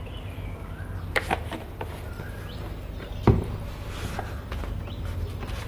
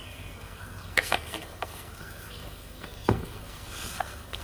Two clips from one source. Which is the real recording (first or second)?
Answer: first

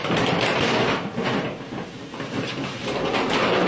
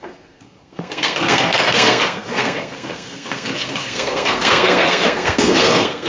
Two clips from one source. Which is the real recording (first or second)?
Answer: first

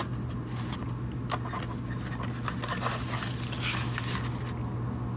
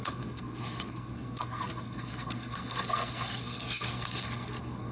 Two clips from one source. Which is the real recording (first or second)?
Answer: first